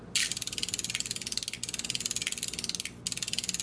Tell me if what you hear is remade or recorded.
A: recorded